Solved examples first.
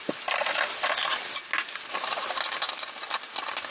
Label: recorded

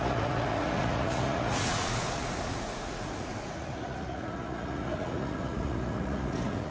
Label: remade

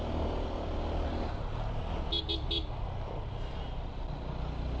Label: recorded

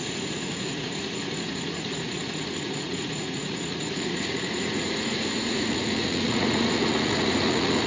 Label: remade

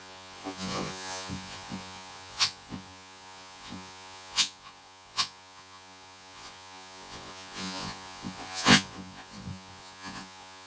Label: remade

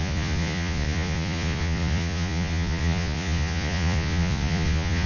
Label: remade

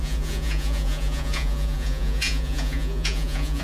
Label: remade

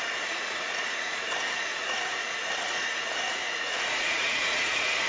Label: remade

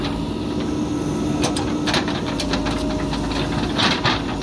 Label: recorded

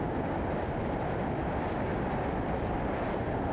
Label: recorded